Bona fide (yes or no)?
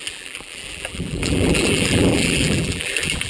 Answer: no